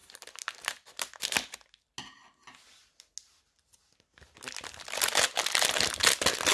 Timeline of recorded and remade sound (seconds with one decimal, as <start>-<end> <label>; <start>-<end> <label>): 0.0-6.5 recorded